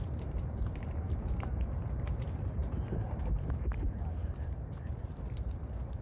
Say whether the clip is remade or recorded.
remade